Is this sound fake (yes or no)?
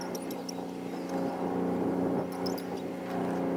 no